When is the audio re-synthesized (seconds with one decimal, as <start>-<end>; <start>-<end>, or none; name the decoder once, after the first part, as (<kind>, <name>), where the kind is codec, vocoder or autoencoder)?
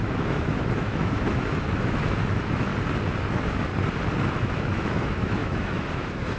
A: 0.0-2.7 (autoencoder, DAC-VAE); 3.3-3.7; 4.3-6.4